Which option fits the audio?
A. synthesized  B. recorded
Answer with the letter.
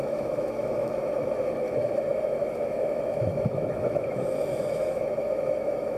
A